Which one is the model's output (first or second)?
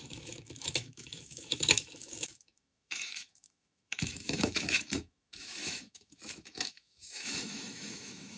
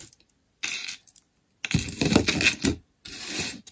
first